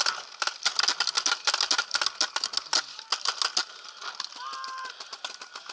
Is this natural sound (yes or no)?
yes